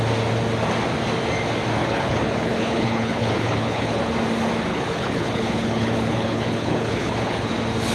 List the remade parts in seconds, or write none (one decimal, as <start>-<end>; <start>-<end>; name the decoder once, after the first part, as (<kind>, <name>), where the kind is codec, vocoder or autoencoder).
1.8-4.0 (codec, HILCodec); 4.7-7.5

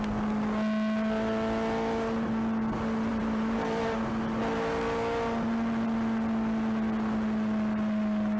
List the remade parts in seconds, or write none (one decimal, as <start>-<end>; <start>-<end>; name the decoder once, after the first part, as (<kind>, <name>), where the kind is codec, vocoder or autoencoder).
3.1-4.1 (vocoder, BigVGAN v2)

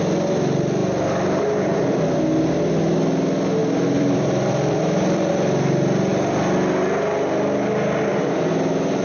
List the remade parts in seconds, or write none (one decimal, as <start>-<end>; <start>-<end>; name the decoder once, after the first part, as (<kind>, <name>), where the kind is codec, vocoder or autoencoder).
0.8-1.4 (vocoder, BigVGAN v2); 3.6-5.3

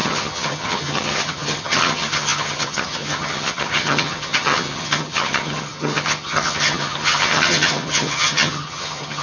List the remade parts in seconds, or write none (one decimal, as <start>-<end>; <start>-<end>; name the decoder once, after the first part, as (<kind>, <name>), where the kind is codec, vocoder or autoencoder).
0.0-9.2 (vocoder, HiFi-GAN)

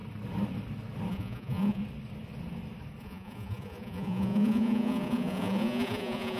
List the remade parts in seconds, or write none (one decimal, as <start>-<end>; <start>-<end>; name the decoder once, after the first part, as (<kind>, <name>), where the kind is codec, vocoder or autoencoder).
1.1-1.8 (vocoder, Vocos); 3.0-6.4

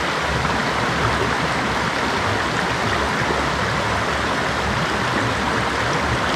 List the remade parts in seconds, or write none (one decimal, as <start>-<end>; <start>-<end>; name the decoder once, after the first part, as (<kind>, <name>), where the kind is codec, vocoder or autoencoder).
none

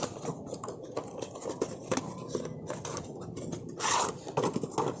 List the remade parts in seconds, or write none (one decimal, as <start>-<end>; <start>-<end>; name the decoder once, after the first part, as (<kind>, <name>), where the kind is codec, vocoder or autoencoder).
none